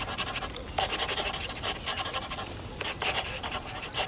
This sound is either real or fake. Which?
real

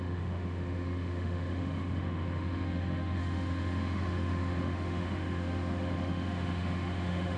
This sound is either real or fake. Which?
fake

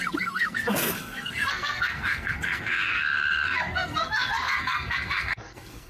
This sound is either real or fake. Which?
fake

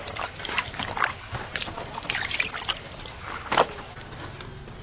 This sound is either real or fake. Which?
real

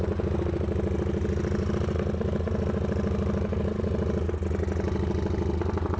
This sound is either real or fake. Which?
real